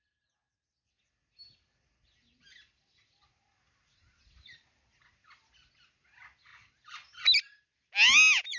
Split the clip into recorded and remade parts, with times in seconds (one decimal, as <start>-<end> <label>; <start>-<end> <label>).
0.0-8.6 recorded